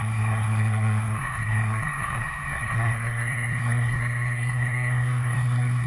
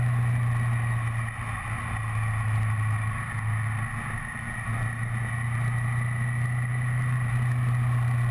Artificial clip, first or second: first